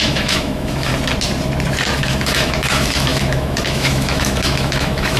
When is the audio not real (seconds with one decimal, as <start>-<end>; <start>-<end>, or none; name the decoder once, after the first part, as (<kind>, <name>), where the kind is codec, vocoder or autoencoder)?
0.0-0.9 (autoencoder, DAC-VAE); 2.0-5.2